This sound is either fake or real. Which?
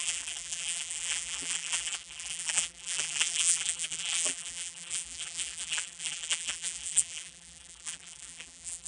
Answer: fake